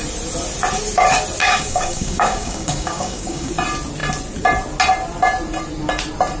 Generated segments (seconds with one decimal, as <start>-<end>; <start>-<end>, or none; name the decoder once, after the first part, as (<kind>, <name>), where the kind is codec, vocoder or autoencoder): 1.4-3.5 (codec, DAC)